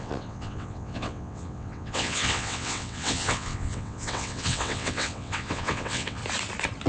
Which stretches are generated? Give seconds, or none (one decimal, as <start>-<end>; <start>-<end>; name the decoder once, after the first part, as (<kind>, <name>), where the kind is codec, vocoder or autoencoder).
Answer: 0.0-6.2 (vocoder, WaveNeXt)